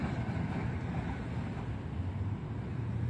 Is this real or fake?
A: real